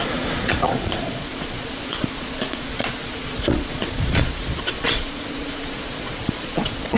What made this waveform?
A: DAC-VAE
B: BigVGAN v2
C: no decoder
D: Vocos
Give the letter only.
D